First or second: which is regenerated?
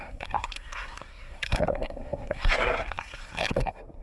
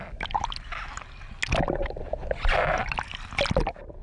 first